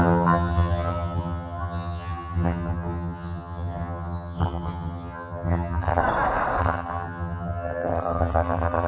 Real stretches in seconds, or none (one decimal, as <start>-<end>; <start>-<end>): 6.0-6.6